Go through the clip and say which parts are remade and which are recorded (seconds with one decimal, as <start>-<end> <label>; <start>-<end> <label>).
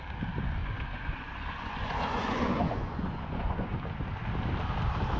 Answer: 0.0-0.6 recorded; 0.6-3.7 remade; 3.7-5.2 recorded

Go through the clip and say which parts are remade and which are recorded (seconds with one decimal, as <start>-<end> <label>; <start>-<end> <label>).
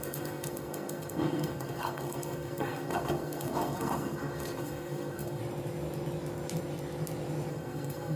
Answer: 0.0-5.4 remade; 5.4-7.5 recorded; 7.5-8.2 remade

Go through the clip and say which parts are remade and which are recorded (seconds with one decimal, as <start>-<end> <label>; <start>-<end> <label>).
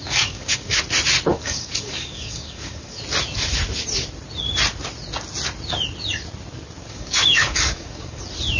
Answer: 0.0-0.8 remade; 0.8-1.3 recorded; 1.3-3.0 remade; 3.0-6.8 recorded; 6.8-8.2 remade; 8.2-8.6 recorded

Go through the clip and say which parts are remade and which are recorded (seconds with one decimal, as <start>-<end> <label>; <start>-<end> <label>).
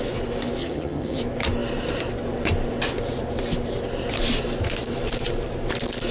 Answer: 0.0-0.6 recorded; 0.6-1.2 remade; 1.2-6.1 recorded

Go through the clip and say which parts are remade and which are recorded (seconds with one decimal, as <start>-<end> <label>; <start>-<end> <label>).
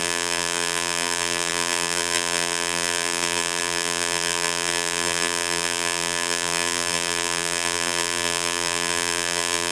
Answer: 0.0-9.7 remade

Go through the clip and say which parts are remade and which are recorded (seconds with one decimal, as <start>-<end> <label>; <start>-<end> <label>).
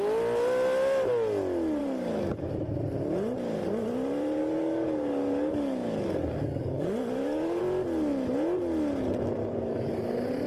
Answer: 0.0-1.8 recorded; 1.8-2.5 remade; 2.5-4.4 recorded; 4.4-7.6 remade; 7.6-9.4 recorded; 9.4-10.0 remade; 10.0-10.5 recorded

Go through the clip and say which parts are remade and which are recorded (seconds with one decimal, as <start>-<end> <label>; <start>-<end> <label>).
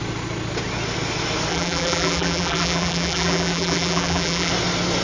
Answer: 0.0-1.5 recorded; 1.5-4.5 remade; 4.5-5.0 recorded